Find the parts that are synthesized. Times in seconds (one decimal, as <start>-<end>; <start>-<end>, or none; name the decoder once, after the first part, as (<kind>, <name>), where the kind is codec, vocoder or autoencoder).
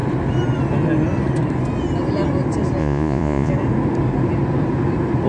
2.8-3.5 (vocoder, Vocos)